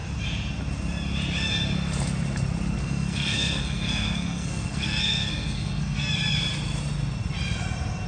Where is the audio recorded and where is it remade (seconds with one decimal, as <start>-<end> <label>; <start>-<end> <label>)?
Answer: 0.0-2.8 recorded; 2.8-6.1 remade; 6.1-8.1 recorded